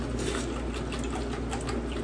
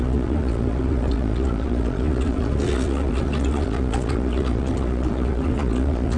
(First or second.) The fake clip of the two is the second